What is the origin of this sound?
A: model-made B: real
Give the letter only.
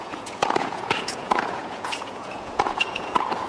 A